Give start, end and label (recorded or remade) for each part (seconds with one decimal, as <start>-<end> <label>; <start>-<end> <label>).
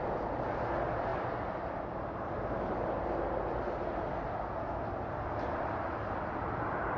0.0-7.0 recorded